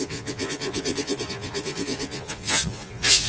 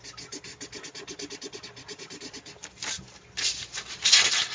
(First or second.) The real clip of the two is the second